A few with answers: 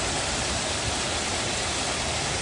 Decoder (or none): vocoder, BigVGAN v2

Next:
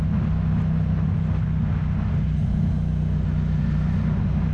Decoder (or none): none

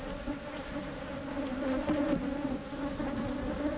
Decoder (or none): none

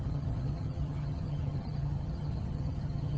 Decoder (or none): vocoder, HiFi-GAN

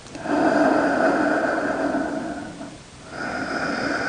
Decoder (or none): vocoder, BigVGAN v2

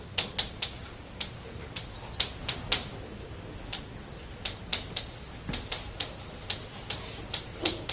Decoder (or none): none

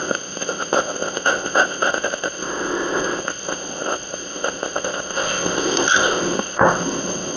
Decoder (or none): codec, ZipCodec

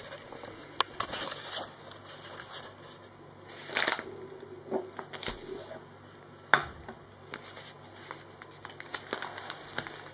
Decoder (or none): none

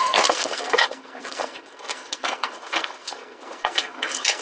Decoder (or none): codec, SNAC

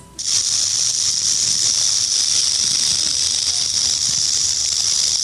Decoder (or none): none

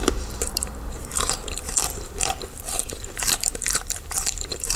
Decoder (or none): vocoder, BigVGAN v2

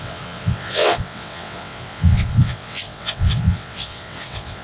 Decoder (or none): vocoder, WaveNeXt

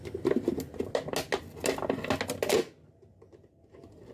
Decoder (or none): none